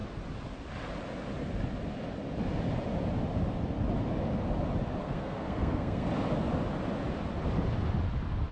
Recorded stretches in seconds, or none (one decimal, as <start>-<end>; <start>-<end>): 0.0-5.0; 6.1-8.5